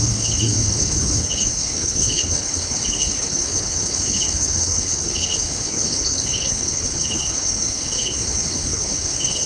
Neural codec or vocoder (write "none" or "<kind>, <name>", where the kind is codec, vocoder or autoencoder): codec, HILCodec